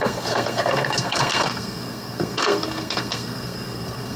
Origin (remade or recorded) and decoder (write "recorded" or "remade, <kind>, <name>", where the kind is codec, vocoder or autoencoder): remade, codec, SNAC